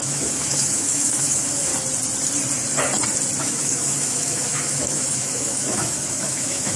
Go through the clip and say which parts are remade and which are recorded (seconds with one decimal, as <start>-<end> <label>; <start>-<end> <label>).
0.0-1.7 remade; 1.7-3.4 recorded; 3.4-6.8 remade